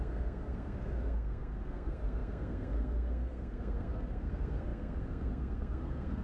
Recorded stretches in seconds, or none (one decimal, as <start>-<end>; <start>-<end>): none